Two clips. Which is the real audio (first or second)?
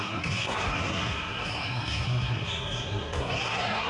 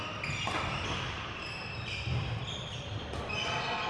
second